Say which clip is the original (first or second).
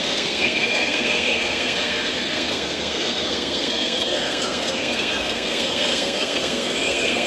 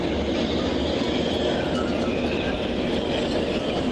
second